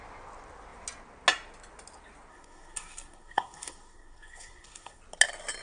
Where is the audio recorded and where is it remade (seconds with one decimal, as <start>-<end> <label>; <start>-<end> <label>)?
0.0-2.3 recorded; 2.3-5.0 remade; 5.0-5.6 recorded